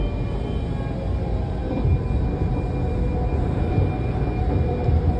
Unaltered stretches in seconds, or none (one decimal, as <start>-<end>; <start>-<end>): 0.0-5.2